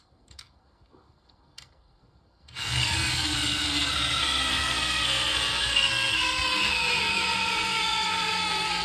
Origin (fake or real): fake